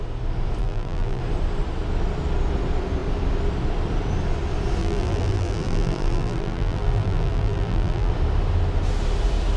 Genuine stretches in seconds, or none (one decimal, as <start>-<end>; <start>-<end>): 0.0-0.6; 1.2-4.8; 8.1-9.6